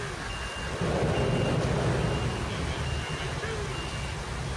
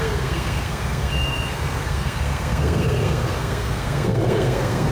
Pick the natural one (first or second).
first